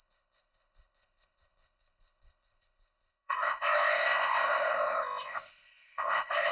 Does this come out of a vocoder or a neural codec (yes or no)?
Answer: yes